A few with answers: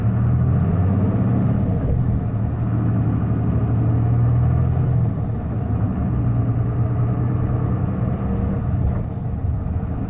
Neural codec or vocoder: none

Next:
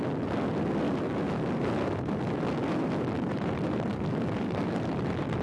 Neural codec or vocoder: none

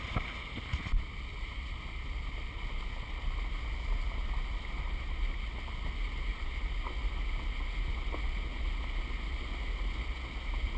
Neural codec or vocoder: none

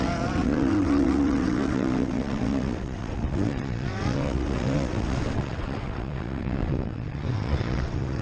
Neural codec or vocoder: vocoder, WaveNeXt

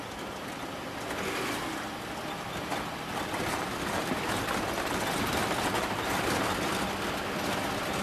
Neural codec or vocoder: none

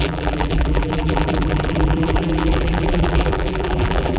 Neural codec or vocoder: vocoder, BigVGAN v2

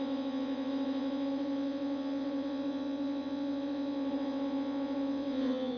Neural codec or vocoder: vocoder, WaveNeXt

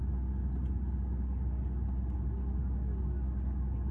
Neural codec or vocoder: none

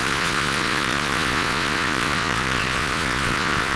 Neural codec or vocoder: vocoder, Vocos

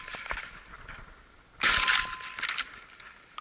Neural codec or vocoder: none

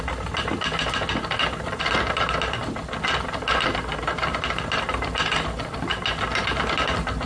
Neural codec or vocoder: none